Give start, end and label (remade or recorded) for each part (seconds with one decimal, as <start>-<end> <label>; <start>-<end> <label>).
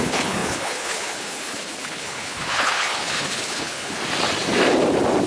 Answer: 0.0-4.0 remade; 4.0-5.3 recorded